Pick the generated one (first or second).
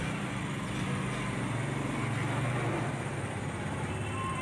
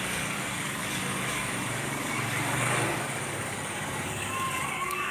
second